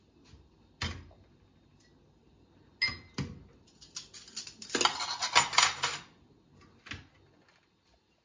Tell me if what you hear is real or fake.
real